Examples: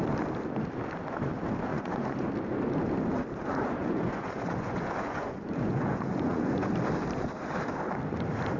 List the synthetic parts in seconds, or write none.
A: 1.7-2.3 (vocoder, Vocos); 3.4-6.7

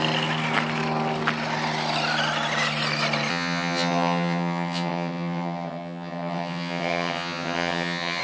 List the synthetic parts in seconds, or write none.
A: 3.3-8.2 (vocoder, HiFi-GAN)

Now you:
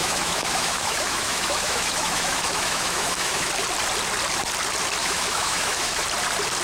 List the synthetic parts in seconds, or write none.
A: 0.0-3.5 (autoencoder, DAC-VAE); 5.0-6.0

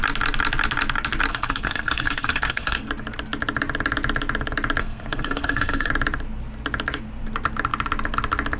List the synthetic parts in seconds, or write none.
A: 1.3-2.9 (codec, SNAC); 4.8-5.9

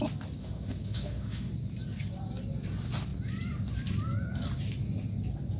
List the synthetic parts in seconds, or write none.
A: 0.4-1.5 (autoencoder, DAC-VAE)

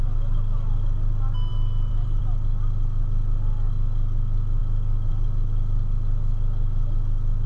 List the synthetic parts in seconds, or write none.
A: 1.5-2.2 (vocoder, BigVGAN v2)